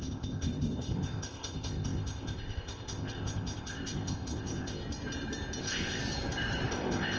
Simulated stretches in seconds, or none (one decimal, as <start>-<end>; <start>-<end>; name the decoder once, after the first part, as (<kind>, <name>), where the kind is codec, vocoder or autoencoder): 0.0-4.8 (codec, ZipCodec); 5.6-6.0; 6.7-7.2